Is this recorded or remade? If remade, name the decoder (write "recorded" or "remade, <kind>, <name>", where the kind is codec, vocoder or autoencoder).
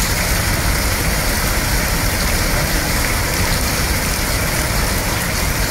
remade, vocoder, BigVGAN v2